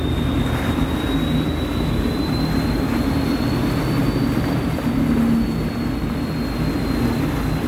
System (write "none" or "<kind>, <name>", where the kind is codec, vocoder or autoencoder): none